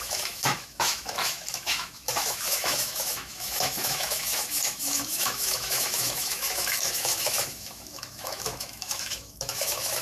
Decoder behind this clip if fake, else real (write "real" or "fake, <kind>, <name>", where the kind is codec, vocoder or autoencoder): fake, autoencoder, DAC-VAE